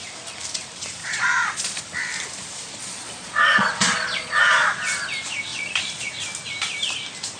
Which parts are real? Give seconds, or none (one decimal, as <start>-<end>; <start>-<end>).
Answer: 0.0-1.0; 1.8-2.8; 4.8-5.5; 6.1-7.4